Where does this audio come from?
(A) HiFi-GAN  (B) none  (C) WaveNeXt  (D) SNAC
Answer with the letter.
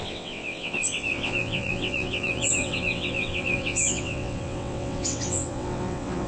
C